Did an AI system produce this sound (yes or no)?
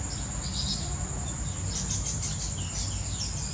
no